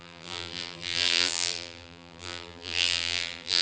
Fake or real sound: fake